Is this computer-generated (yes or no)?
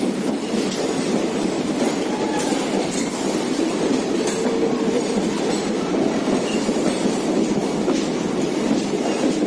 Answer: yes